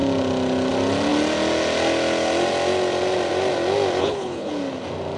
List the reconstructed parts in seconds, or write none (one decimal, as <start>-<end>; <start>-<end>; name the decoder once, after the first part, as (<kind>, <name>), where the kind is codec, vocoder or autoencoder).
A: 4.0-4.5 (codec, HILCodec)